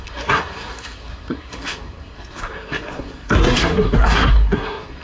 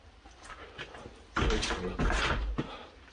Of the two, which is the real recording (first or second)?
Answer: second